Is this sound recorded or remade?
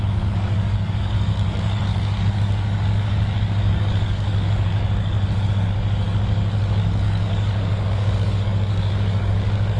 remade